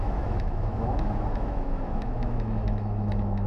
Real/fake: fake